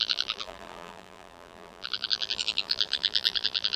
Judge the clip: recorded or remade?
remade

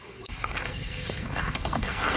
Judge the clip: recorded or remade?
remade